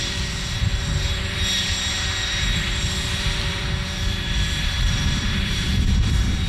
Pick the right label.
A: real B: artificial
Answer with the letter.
B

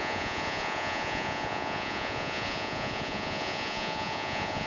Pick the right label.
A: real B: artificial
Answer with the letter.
B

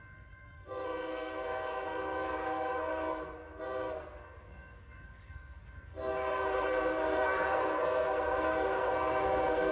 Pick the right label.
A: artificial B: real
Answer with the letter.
A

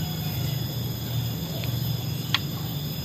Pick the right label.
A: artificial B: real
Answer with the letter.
B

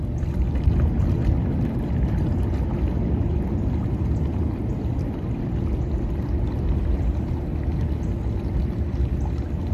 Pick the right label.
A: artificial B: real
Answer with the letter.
B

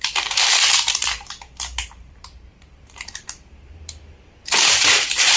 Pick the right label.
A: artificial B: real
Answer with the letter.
A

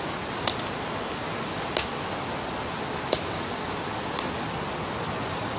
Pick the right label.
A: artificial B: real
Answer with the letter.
B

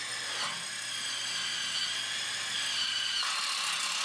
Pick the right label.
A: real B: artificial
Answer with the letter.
A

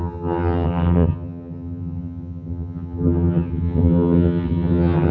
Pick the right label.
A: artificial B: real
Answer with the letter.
A